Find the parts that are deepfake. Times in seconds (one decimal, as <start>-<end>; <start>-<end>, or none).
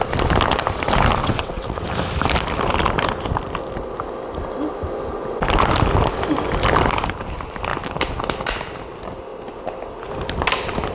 1.2-1.9